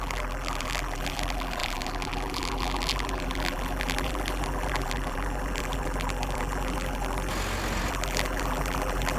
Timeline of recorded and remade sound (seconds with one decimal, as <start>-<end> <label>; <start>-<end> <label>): 0.0-7.3 remade; 7.3-7.9 recorded; 7.9-9.2 remade